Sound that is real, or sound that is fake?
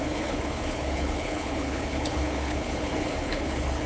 fake